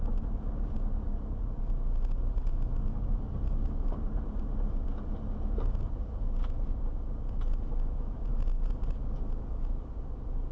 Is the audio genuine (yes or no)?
yes